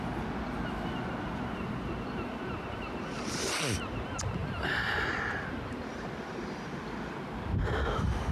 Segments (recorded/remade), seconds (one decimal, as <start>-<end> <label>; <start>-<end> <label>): 0.0-8.3 recorded